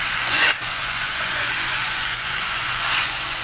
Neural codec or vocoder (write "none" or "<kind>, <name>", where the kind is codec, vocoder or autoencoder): vocoder, Vocos